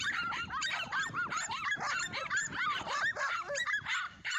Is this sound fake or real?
fake